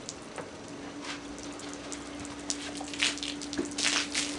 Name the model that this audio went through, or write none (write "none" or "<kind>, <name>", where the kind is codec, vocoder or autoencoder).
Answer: none